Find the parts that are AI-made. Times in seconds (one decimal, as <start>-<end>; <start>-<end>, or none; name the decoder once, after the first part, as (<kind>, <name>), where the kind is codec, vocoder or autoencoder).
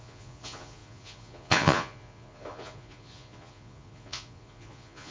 0.0-5.1 (vocoder, Vocos)